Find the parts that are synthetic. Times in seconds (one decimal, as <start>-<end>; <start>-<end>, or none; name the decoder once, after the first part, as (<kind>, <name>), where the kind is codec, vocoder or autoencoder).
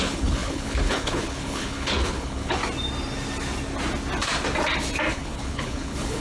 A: 0.0-2.6 (codec, HILCodec); 5.1-6.2